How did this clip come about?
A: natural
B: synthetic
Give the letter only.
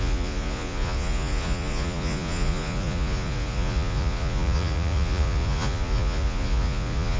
B